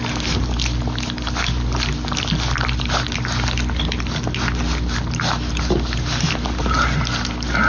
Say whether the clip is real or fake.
real